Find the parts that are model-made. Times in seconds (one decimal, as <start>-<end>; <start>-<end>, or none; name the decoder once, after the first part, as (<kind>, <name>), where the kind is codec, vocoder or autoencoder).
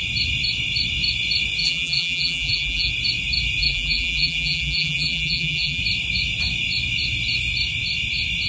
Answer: 1.6-2.9 (vocoder, BigVGAN v2); 3.6-5.8